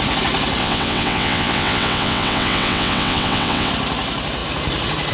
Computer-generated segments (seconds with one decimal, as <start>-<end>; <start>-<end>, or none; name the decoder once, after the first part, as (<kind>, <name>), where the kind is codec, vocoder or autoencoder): 0.6-3.7 (vocoder, WaveNeXt)